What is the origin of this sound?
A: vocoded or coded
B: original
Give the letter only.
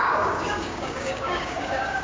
A